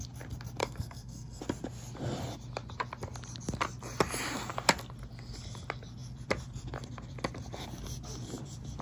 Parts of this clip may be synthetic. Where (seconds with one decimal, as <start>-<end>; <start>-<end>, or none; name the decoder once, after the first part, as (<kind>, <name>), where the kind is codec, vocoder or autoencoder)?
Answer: 0.6-1.4 (codec, SNAC)